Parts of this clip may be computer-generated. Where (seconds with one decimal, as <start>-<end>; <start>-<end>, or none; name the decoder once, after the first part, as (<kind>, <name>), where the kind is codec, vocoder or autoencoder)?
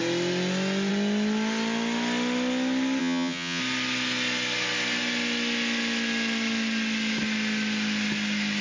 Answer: 3.0-3.6 (vocoder, HiFi-GAN)